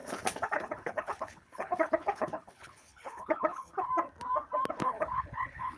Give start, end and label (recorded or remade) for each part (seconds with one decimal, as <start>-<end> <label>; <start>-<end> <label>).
0.0-3.9 remade; 3.9-4.7 recorded; 4.7-5.8 remade